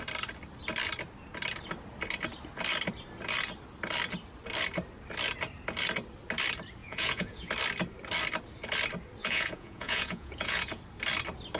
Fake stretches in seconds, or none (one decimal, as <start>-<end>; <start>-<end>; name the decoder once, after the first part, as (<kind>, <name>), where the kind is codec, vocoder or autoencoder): 6.8-7.5 (vocoder, Vocos); 9.2-10.8